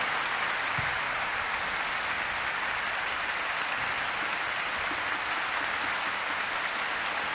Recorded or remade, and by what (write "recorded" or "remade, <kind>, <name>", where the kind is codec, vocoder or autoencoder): recorded